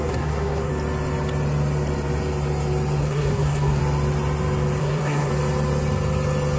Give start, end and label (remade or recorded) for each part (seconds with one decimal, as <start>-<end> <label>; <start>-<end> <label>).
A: 0.0-0.7 remade; 0.7-3.0 recorded; 3.0-3.8 remade; 3.8-4.8 recorded; 4.8-5.3 remade; 5.3-6.6 recorded

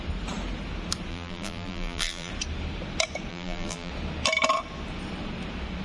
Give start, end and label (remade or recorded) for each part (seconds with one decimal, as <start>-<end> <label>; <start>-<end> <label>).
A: 0.0-1.1 recorded; 1.1-2.3 remade; 2.3-3.3 recorded; 3.3-3.9 remade; 3.9-5.8 recorded

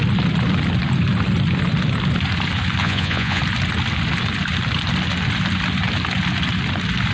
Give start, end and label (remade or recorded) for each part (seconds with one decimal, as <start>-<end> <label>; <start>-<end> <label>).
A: 0.0-2.8 recorded; 2.8-3.4 remade; 3.4-7.1 recorded

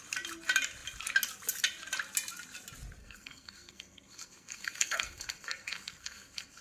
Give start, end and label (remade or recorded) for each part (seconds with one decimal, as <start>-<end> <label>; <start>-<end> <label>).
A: 0.0-3.0 recorded; 3.0-6.6 remade

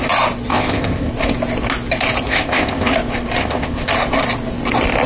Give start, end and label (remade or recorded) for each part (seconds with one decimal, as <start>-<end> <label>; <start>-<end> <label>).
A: 0.0-0.5 recorded; 0.5-1.1 remade; 1.1-2.3 recorded; 2.3-2.9 remade; 2.9-3.4 recorded; 3.4-3.9 remade; 3.9-5.1 recorded

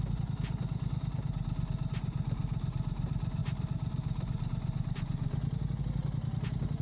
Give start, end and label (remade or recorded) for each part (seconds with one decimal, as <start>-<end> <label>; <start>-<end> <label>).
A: 0.0-6.8 recorded

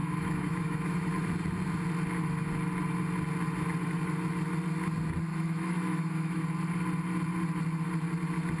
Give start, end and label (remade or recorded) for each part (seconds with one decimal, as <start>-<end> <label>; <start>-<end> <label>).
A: 0.0-1.1 remade; 1.1-5.3 recorded; 5.3-6.4 remade; 6.4-8.6 recorded